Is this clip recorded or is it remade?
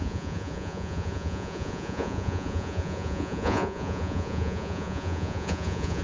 remade